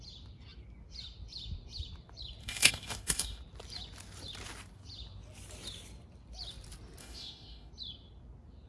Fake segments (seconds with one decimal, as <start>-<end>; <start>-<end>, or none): 2.4-3.4; 7.0-7.7